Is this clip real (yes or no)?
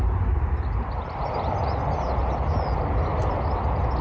yes